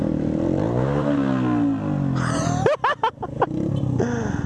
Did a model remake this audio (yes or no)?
no